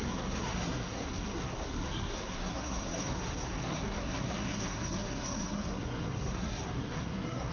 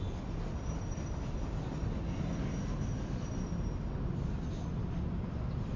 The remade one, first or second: first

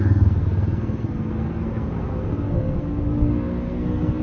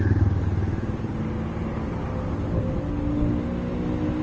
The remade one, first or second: first